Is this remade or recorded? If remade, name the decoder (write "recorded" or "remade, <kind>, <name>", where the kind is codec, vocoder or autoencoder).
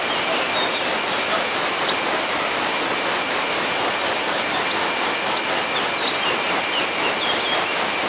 recorded